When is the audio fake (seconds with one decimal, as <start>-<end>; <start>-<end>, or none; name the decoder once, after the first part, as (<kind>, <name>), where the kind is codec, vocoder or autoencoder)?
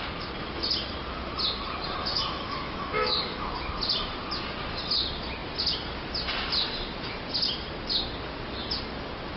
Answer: 2.1-3.5 (autoencoder, DAC-VAE)